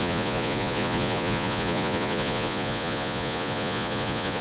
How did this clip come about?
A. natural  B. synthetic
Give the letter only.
B